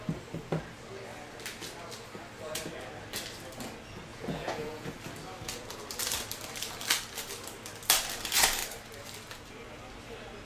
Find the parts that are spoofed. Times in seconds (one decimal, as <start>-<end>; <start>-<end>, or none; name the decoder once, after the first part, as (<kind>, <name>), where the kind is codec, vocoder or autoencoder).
4.1-4.9 (vocoder, Vocos)